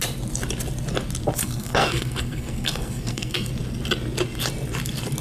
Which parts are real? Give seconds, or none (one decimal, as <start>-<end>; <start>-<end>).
0.0-1.4; 3.5-5.2